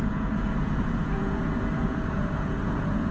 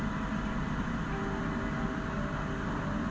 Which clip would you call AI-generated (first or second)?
first